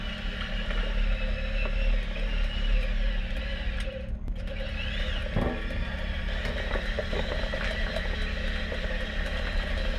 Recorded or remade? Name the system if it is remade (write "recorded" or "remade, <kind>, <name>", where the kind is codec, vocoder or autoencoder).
recorded